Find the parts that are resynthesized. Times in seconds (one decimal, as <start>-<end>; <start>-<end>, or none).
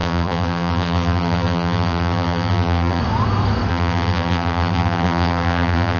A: 0.0-3.0; 3.7-6.0